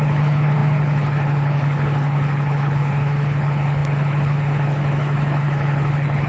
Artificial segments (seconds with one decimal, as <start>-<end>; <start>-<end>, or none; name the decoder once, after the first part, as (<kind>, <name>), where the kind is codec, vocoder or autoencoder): 0.0-6.3 (codec, HILCodec)